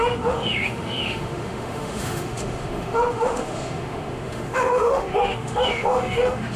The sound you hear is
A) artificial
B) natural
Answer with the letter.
A